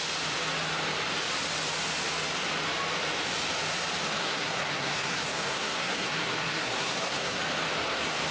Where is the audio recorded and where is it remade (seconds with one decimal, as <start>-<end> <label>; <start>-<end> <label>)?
0.0-4.2 recorded; 4.2-7.4 remade; 7.4-8.3 recorded